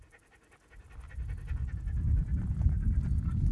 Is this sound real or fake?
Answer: real